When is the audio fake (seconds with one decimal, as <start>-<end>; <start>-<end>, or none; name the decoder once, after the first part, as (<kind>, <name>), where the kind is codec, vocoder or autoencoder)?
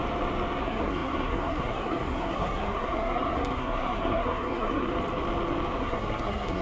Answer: 0.6-4.9 (codec, SNAC); 5.8-6.6